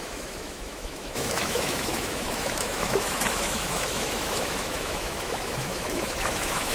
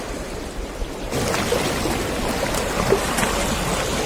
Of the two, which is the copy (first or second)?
first